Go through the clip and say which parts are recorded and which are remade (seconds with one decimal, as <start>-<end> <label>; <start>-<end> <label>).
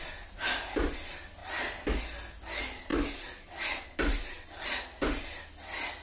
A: 0.0-6.0 recorded